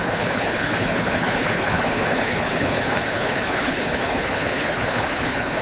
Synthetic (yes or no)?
yes